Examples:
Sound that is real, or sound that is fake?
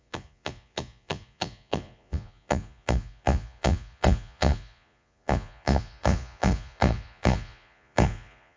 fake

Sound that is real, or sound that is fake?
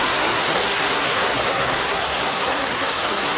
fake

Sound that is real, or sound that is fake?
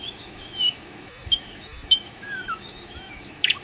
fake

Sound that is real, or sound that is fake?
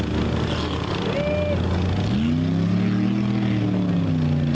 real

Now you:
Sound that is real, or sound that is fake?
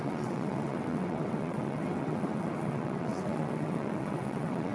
fake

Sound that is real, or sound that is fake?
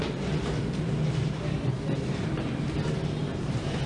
fake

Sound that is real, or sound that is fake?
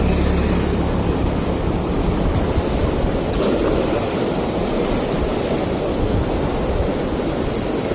real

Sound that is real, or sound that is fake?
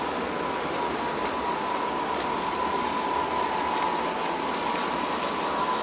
real